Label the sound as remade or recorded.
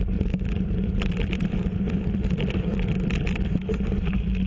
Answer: remade